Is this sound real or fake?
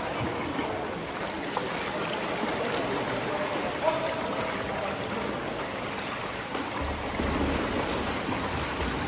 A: real